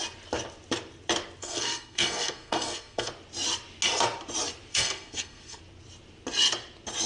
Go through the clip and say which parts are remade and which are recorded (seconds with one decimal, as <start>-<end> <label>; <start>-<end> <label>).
0.0-1.4 recorded; 1.4-3.1 remade; 3.1-4.7 recorded; 4.7-5.6 remade; 5.6-7.1 recorded